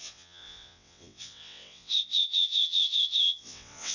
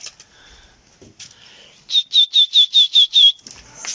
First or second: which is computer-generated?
first